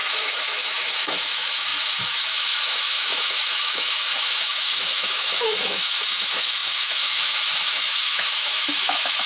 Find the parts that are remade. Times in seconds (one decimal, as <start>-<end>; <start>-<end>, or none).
0.0-9.3